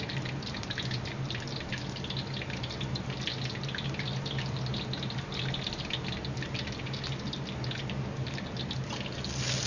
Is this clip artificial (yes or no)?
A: no